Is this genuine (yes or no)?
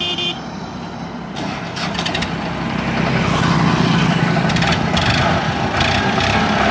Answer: yes